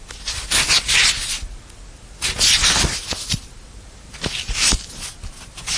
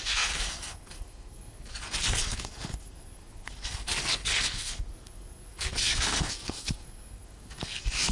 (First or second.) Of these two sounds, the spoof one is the second